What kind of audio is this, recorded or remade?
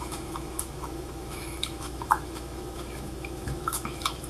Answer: remade